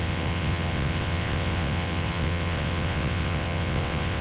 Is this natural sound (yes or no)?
no